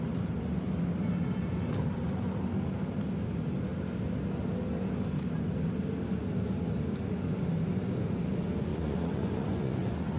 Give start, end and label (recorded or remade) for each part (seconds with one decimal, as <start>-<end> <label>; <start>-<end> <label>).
0.0-8.7 recorded; 8.7-10.2 remade